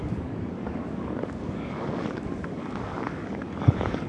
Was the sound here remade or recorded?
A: remade